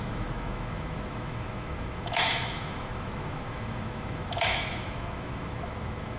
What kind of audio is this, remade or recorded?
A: remade